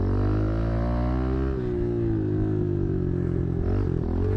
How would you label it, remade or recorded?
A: recorded